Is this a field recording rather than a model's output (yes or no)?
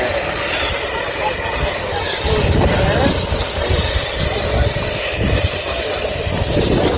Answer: yes